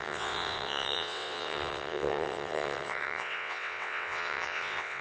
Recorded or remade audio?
remade